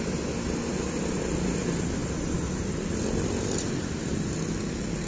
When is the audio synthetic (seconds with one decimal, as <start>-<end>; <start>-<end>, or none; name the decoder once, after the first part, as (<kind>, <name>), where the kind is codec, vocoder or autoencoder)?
none